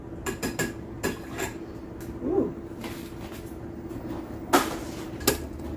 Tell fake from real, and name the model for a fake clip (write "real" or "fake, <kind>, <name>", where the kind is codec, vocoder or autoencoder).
real